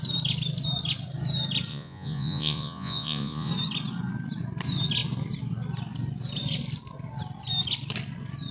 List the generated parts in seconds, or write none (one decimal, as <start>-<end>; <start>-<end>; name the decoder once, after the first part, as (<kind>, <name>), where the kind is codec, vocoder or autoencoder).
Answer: 1.7-3.5 (vocoder, Vocos)